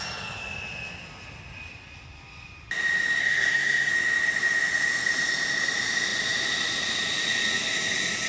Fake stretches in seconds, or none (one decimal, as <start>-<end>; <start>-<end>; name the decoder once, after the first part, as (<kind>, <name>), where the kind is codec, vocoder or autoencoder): 3.2-3.9 (codec, SNAC)